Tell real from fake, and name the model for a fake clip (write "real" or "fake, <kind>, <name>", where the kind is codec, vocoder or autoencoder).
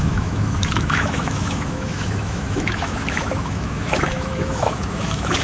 fake, autoencoder, DAC-VAE